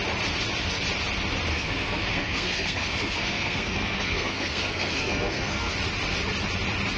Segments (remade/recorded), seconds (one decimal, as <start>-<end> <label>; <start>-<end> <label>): 0.0-1.5 recorded; 1.5-5.7 remade; 5.7-7.0 recorded